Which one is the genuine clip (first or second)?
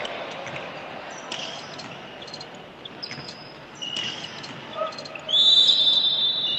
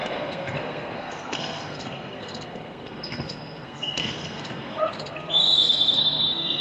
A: first